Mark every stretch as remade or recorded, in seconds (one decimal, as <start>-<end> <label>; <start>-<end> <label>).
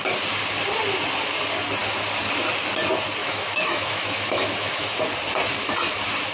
0.0-3.2 recorded; 3.2-5.0 remade; 5.0-6.3 recorded